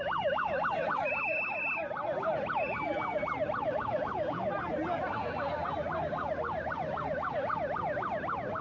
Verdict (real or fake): real